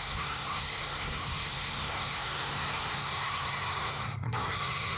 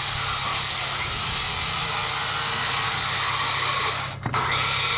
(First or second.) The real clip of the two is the second